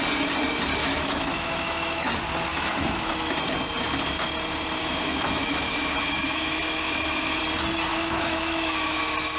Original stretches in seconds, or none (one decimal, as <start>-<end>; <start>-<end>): 0.0-0.8; 2.1-2.5; 3.1-4.8; 7.4-7.9; 9.0-9.4